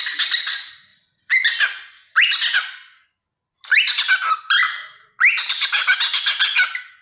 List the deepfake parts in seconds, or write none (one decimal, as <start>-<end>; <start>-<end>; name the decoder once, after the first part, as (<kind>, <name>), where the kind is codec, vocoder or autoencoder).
none